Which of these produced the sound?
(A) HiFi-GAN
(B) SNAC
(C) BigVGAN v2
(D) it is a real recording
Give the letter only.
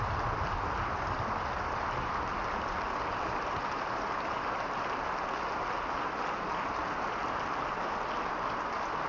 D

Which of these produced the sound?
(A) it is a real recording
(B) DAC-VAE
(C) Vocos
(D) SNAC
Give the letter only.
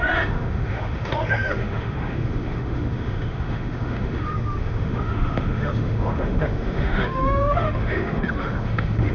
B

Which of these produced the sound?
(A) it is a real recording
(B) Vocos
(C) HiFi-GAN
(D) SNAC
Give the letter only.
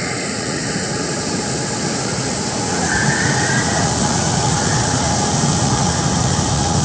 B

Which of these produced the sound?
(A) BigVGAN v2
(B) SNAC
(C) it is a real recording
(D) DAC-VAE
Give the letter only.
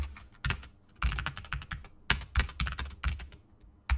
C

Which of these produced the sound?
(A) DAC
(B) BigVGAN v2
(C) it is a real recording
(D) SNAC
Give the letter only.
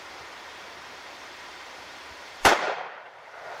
B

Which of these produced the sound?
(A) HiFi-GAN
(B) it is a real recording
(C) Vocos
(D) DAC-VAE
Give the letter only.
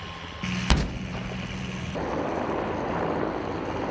B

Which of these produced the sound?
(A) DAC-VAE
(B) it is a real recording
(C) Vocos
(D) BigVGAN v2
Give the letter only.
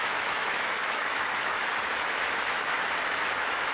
A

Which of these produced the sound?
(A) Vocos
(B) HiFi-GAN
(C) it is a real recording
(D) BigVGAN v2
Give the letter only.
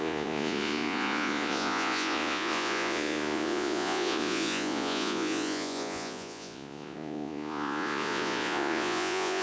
A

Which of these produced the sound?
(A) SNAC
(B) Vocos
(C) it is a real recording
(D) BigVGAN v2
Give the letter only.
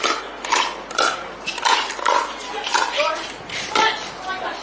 C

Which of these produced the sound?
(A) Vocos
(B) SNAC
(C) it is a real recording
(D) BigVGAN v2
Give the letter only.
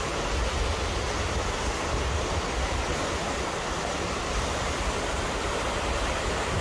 C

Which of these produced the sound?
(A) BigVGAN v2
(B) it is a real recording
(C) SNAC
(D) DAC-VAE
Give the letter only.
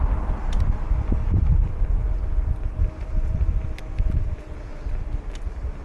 B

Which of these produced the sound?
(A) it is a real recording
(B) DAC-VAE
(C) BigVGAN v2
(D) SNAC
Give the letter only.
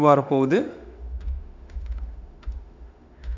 B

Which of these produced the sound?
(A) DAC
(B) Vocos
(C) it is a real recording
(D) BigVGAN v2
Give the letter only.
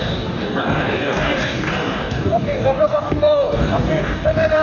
A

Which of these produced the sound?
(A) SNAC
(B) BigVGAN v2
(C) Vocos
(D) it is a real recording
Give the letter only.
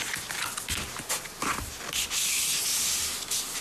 D